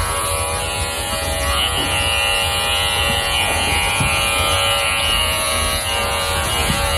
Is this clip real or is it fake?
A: fake